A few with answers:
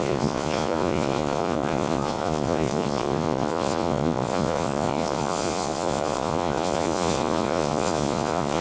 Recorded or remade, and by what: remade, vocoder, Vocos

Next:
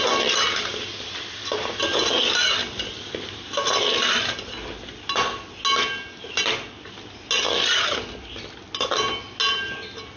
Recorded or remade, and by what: recorded